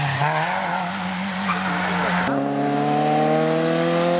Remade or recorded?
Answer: recorded